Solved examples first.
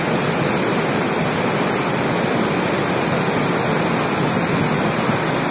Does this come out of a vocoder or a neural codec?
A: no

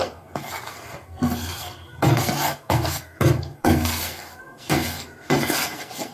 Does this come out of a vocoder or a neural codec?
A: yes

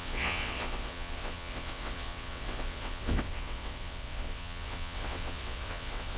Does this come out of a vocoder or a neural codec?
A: yes